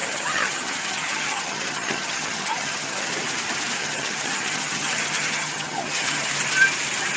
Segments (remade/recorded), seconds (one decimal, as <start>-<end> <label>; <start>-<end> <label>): 0.0-3.1 remade; 3.1-3.8 recorded; 3.8-6.3 remade; 6.3-7.2 recorded